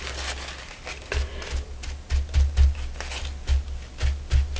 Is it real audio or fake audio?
real